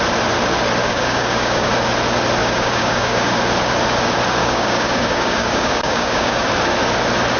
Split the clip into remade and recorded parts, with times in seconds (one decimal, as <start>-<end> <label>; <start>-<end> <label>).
0.0-0.8 recorded; 0.8-1.7 remade; 1.7-2.4 recorded; 2.4-3.4 remade; 3.4-4.4 recorded; 4.4-6.5 remade; 6.5-7.4 recorded